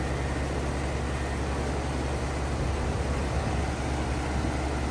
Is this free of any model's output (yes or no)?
yes